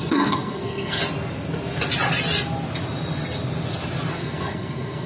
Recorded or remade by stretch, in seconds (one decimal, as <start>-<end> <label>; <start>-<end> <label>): 0.0-1.0 remade; 1.0-4.1 recorded; 4.1-5.1 remade